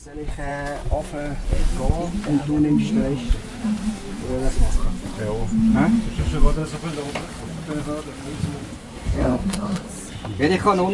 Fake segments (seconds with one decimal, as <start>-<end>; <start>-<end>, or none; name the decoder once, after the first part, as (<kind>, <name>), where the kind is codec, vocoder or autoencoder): 8.8-9.9 (codec, SNAC)